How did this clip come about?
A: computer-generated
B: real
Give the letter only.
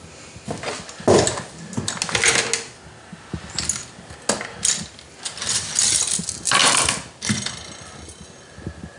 B